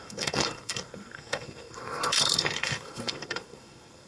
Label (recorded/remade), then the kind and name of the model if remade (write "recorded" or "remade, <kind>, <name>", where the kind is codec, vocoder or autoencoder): remade, codec, SNAC